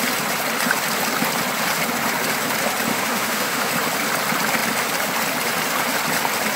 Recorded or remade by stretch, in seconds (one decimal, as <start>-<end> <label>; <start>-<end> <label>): 0.0-2.9 recorded; 2.9-3.7 remade; 3.7-6.6 recorded